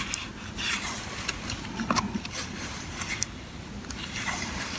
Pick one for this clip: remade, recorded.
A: remade